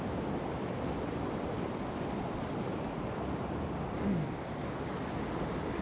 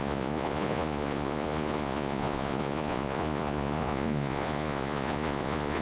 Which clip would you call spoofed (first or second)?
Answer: second